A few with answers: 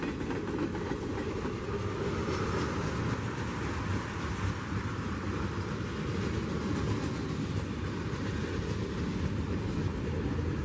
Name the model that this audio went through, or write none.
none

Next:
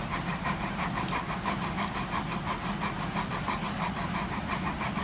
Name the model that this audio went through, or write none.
none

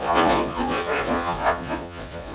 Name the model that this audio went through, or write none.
vocoder, Vocos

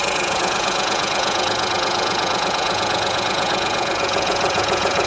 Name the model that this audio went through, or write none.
vocoder, Vocos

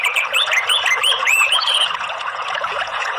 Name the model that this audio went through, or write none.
vocoder, Vocos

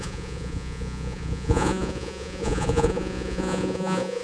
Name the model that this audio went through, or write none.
vocoder, Vocos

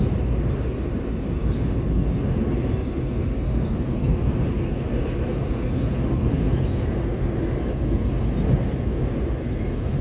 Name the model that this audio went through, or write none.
none